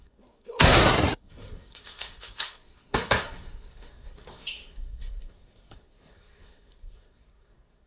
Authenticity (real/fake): fake